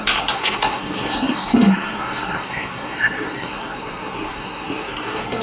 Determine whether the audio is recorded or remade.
remade